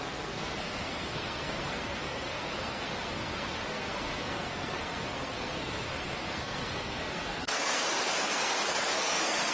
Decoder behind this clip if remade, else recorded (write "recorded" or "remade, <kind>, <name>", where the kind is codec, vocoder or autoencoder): remade, codec, SNAC